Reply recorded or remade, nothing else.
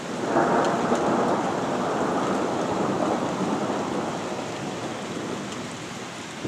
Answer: recorded